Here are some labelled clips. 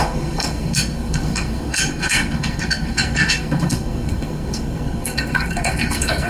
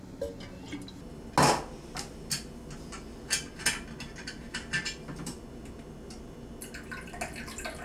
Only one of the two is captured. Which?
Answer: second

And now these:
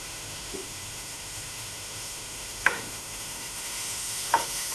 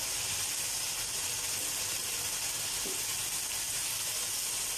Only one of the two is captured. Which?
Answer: second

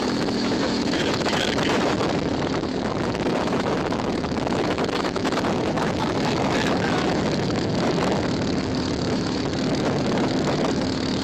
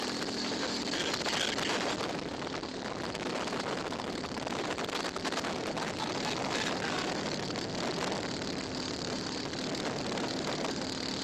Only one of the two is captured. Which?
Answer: second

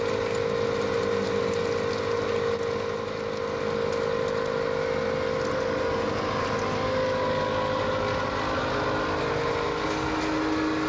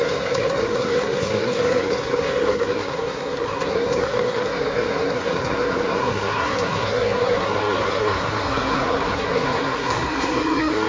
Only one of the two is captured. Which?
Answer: first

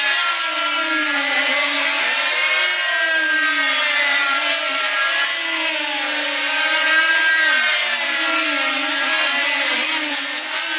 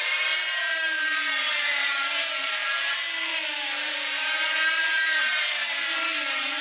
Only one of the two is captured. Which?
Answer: first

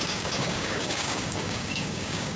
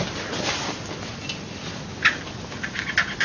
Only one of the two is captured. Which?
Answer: second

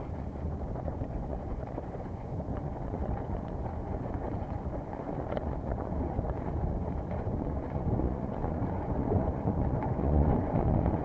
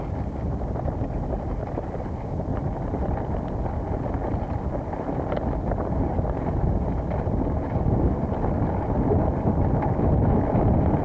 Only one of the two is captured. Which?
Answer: second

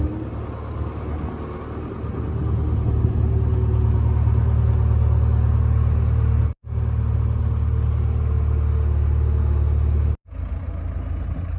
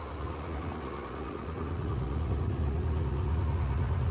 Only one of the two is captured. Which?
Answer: first